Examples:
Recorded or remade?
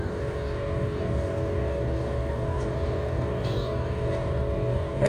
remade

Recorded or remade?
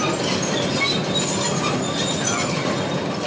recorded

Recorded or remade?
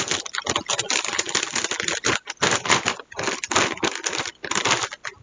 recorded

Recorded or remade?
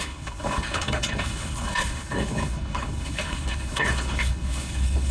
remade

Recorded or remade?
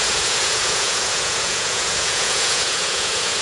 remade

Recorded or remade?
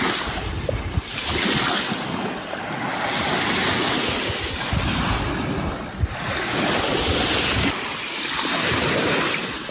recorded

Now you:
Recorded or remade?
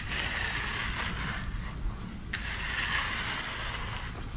recorded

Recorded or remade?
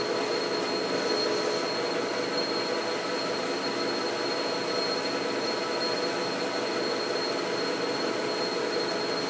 recorded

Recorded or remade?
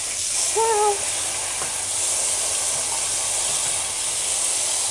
recorded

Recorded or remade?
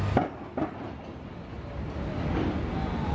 recorded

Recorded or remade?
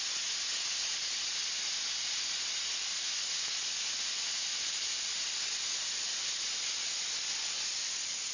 recorded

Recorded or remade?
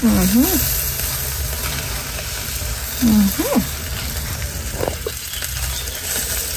recorded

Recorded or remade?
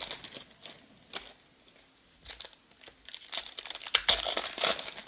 recorded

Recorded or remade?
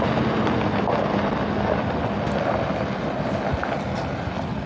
recorded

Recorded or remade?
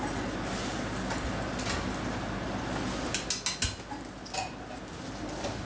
recorded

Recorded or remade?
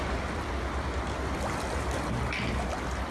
recorded